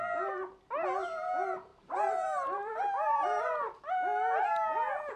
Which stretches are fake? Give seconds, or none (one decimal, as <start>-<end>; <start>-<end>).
1.7-2.7; 3.2-3.8